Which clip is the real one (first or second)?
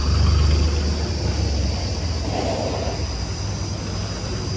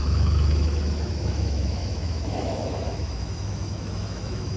first